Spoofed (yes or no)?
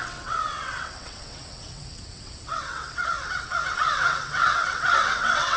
yes